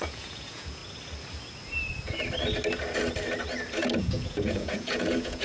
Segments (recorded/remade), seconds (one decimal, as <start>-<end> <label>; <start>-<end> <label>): 0.0-0.8 remade; 0.8-4.0 recorded; 4.0-5.4 remade